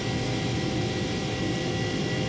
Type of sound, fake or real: real